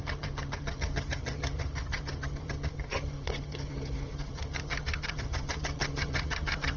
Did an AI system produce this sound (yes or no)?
yes